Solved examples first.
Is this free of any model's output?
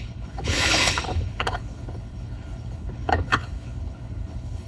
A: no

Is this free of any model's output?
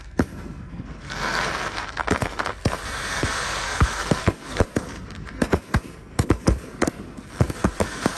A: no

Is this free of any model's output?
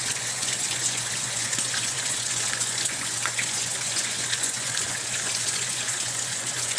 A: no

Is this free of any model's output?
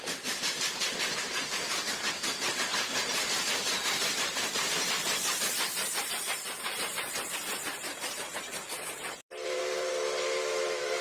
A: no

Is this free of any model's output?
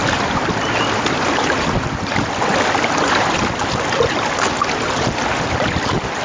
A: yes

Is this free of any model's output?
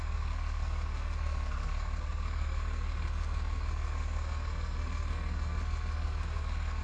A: no